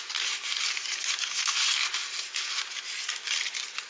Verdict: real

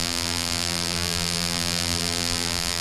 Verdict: fake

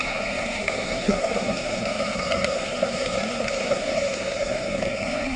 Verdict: fake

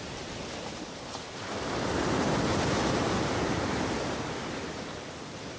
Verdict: real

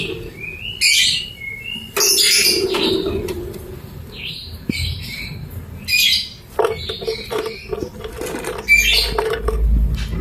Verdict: real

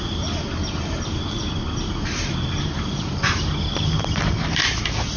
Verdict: fake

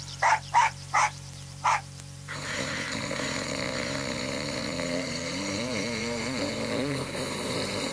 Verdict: fake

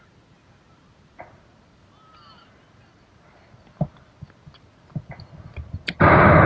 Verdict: real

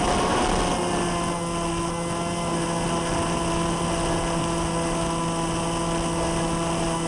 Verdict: real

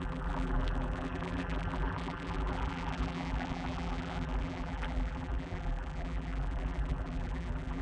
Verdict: fake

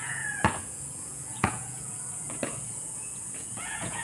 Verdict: fake